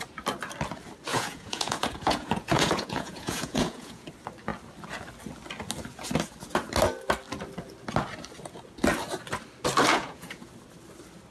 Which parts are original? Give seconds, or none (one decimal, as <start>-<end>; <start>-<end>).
0.0-1.1; 4.1-9.9; 10.5-11.3